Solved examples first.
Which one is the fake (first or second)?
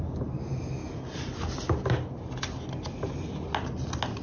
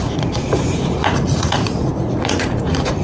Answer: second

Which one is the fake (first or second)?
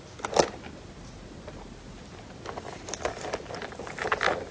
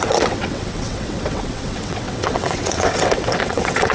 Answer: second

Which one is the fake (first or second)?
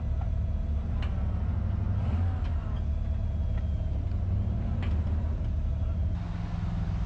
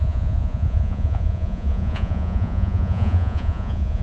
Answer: second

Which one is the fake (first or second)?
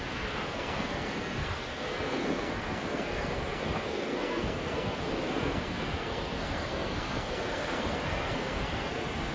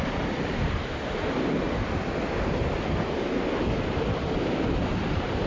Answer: first